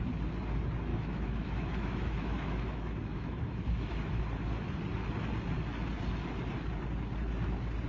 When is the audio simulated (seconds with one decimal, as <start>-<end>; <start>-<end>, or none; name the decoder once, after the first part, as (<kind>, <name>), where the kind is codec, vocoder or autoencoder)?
0.9-4.2 (autoencoder, DAC-VAE)